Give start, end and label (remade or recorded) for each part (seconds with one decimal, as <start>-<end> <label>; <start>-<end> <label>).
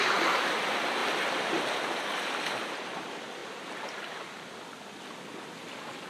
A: 0.0-1.0 recorded; 1.0-3.0 remade; 3.0-3.4 recorded; 3.4-4.5 remade; 4.5-6.1 recorded